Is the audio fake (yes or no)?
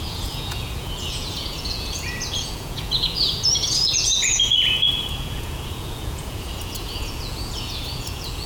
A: yes